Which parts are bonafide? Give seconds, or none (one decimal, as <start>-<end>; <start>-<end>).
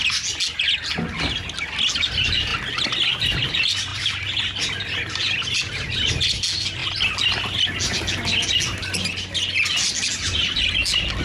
0.0-11.2